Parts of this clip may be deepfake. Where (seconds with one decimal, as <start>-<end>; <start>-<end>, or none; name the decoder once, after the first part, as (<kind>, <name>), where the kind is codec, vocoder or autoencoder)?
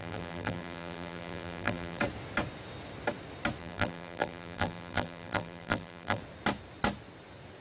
0.0-2.0 (vocoder, BigVGAN v2); 3.6-6.2